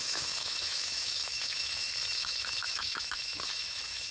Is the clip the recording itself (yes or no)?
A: no